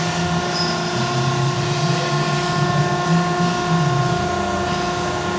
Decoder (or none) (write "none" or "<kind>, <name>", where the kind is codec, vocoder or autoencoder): none